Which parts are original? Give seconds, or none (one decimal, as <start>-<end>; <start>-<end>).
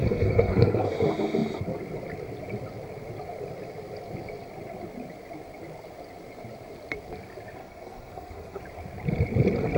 0.9-7.6; 8.6-9.8